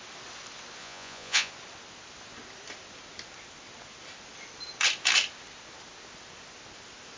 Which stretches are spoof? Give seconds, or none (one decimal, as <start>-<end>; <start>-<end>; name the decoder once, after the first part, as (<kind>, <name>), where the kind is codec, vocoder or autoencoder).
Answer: 0.8-1.5 (vocoder, Vocos)